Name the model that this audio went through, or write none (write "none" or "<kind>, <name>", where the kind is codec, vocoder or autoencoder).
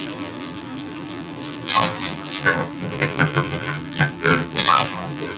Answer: vocoder, BigVGAN v2